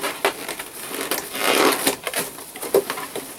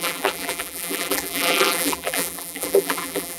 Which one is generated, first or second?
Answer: second